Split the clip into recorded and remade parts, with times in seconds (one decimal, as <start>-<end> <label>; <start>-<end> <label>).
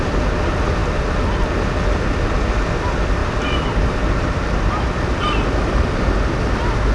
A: 0.0-3.2 recorded; 3.2-5.8 remade; 5.8-6.9 recorded